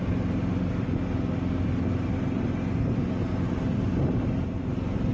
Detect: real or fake real